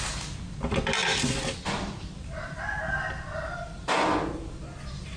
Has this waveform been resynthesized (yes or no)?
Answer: no